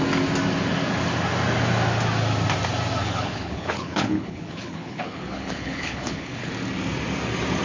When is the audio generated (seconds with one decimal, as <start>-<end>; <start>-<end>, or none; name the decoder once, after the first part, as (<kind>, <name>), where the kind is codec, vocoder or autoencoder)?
3.0-6.5 (codec, HILCodec)